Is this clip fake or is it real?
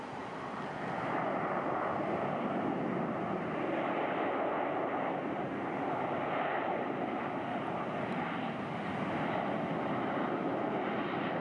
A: real